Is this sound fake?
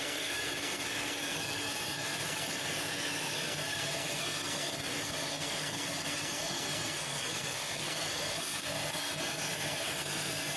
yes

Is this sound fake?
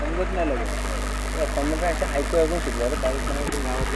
no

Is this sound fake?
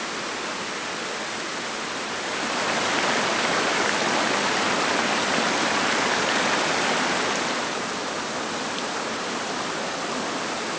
no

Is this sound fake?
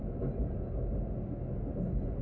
no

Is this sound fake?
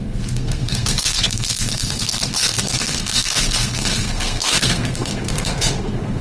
yes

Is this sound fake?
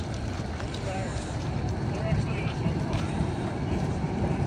yes